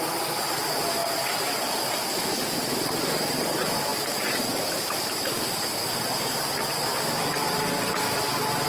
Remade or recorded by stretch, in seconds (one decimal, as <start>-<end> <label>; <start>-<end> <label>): 0.0-3.9 remade; 3.9-5.9 recorded; 5.9-8.7 remade